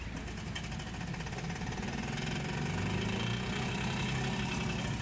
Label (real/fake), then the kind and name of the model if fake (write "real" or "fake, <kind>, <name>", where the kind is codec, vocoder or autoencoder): real